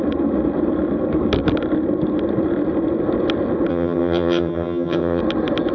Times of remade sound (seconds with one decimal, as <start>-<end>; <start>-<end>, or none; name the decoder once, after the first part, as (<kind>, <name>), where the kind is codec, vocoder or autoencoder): 3.7-5.2 (vocoder, HiFi-GAN)